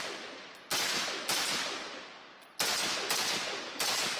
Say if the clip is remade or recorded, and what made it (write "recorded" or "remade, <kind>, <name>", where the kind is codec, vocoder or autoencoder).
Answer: recorded